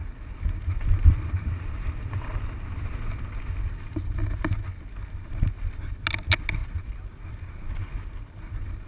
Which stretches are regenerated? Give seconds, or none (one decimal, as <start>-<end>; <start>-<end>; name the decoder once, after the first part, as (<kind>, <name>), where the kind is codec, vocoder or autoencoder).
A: none